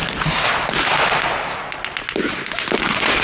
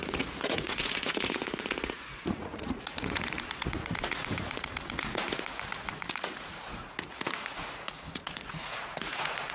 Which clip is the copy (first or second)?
second